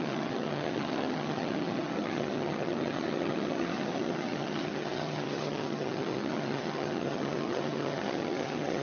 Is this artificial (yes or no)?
yes